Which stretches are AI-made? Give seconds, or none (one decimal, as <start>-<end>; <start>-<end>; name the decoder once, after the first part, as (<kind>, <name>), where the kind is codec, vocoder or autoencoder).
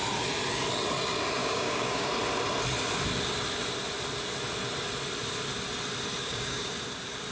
1.4-2.1 (codec, DAC); 6.2-6.7